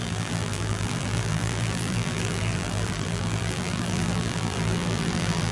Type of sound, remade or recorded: remade